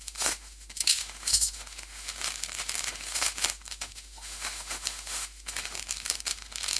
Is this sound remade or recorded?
remade